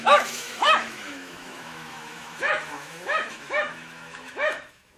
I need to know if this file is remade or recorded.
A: remade